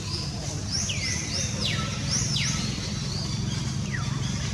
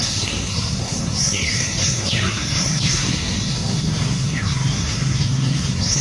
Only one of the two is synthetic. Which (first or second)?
second